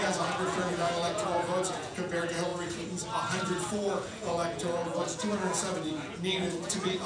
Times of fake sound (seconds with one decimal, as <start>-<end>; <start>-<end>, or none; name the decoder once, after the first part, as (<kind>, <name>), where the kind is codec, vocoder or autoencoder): 0.0-2.5 (vocoder, Vocos); 3.7-7.1